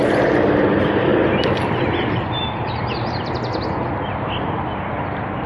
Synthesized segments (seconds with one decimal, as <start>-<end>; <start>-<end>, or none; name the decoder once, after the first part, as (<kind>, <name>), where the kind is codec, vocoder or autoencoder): none